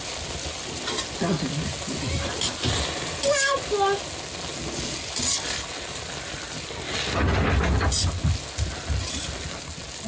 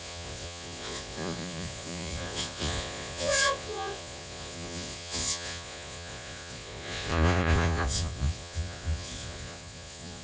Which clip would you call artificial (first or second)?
second